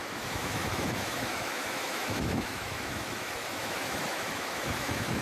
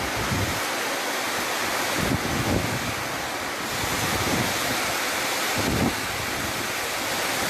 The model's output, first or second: first